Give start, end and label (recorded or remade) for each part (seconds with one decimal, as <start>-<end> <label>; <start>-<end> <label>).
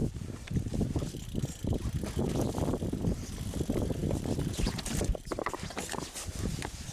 0.0-6.9 recorded